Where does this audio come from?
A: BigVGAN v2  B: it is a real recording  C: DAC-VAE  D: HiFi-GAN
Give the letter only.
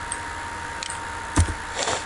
B